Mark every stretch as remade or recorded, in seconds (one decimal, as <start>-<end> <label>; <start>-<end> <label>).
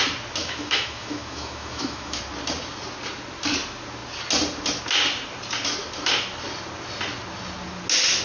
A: 0.0-0.4 recorded; 0.4-2.2 remade; 2.2-8.2 recorded